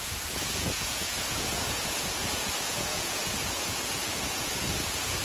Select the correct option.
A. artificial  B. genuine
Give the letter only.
A